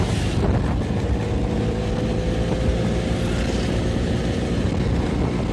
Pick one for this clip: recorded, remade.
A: recorded